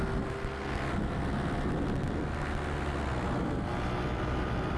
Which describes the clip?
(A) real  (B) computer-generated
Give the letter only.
A